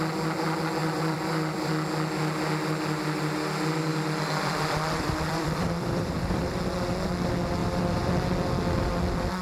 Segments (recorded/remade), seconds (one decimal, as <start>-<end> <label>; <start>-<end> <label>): 0.0-0.8 recorded; 0.8-1.7 remade; 1.7-3.9 recorded; 3.9-6.6 remade; 6.6-7.6 recorded; 7.6-8.1 remade; 8.1-9.4 recorded